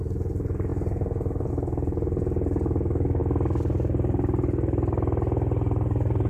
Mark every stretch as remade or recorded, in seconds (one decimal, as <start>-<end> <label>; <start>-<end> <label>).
0.0-6.3 recorded